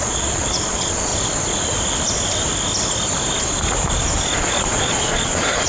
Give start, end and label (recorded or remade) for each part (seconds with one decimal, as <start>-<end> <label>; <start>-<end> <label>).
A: 0.0-1.1 remade; 1.1-4.4 recorded; 4.4-5.7 remade